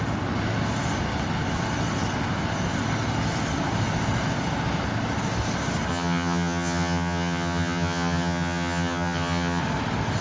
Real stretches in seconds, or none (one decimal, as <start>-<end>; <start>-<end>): 0.0-5.9; 9.6-10.2